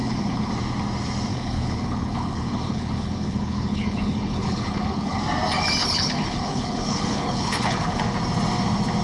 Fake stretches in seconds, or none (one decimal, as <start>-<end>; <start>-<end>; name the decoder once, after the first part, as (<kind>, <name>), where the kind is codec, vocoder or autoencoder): 0.0-0.5 (codec, HILCodec); 1.3-5.2; 5.8-8.0